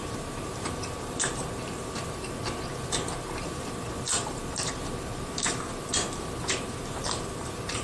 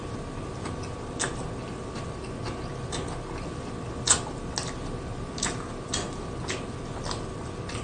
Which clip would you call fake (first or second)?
first